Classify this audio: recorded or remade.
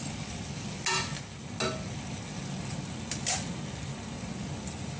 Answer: recorded